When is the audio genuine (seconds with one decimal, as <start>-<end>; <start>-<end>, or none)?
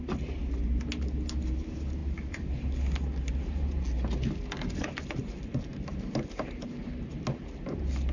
0.0-8.1